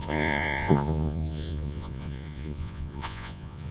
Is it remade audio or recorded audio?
remade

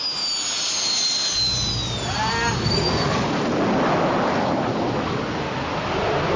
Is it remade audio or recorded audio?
recorded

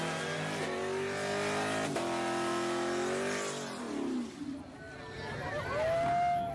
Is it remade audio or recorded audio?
recorded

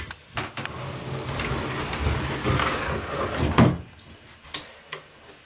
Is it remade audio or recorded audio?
recorded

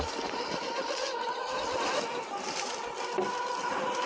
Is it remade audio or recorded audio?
recorded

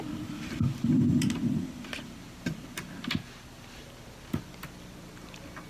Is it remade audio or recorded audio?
recorded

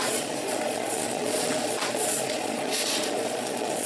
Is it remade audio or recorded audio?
remade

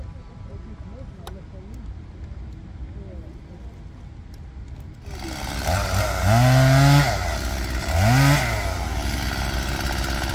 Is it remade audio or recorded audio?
recorded